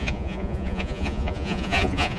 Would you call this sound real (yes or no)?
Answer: no